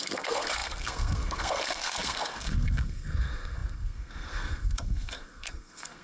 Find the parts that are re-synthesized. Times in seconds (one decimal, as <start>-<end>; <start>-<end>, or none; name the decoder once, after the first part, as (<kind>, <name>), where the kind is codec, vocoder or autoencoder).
0.0-6.0 (codec, SNAC)